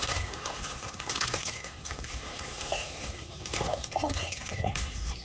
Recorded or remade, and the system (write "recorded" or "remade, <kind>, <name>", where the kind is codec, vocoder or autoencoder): remade, codec, SNAC